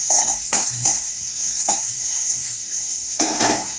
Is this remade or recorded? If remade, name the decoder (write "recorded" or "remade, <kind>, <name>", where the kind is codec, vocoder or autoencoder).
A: remade, codec, SNAC